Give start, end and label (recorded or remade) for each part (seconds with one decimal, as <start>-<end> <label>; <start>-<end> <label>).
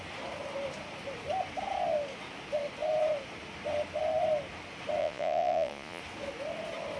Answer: 0.0-5.0 recorded; 5.0-6.0 remade; 6.0-7.0 recorded